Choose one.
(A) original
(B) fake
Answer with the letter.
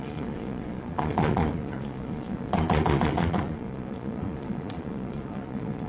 B